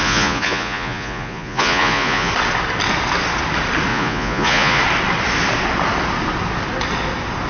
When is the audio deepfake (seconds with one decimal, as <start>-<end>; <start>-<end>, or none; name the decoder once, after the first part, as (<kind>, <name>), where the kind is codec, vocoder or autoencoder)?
0.0-2.3 (vocoder, Vocos); 3.9-4.8